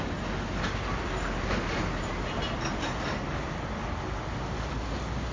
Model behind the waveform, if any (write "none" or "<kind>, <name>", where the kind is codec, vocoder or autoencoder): none